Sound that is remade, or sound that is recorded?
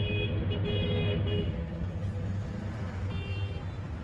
recorded